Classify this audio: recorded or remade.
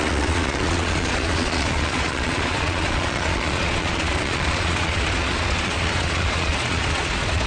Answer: remade